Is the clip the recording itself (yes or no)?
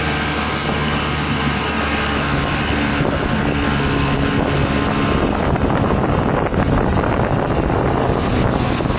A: yes